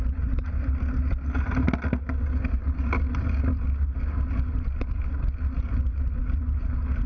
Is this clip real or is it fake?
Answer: real